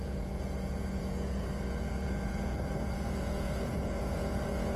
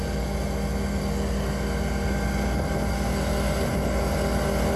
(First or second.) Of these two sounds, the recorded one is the second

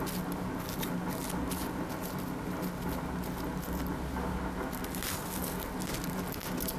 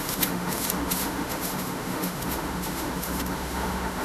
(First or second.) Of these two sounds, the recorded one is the first